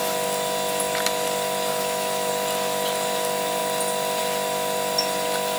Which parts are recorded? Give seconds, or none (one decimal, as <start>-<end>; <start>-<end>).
0.0-1.7; 2.3-5.6